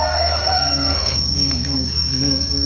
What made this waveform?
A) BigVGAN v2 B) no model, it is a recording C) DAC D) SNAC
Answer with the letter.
D